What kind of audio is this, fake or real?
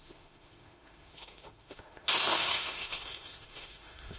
fake